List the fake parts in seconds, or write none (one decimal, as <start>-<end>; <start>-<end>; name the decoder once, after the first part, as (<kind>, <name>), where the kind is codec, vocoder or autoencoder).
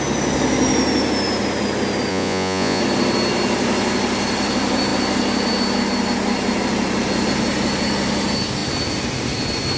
2.1-2.8 (vocoder, Vocos)